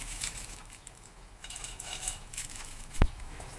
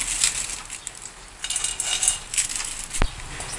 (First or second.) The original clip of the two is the second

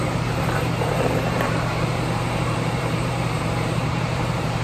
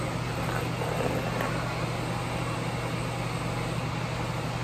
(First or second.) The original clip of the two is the second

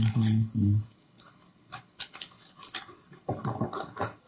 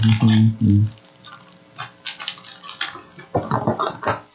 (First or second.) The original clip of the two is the second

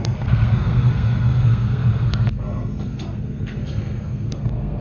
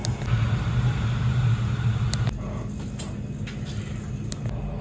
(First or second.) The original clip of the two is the second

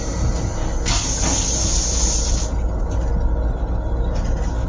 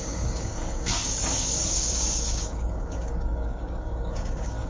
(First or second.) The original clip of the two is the first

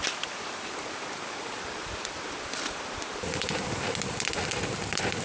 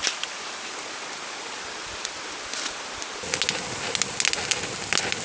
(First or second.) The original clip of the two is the second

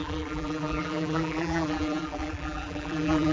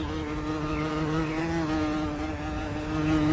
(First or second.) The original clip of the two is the second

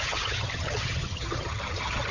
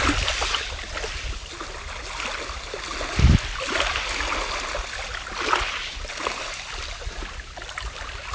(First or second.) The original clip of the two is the second